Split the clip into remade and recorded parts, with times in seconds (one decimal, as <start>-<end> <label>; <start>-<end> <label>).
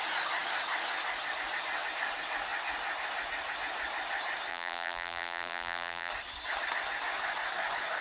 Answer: 0.0-4.5 recorded; 4.5-6.1 remade; 6.1-8.0 recorded